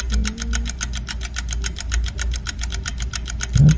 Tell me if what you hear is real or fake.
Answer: real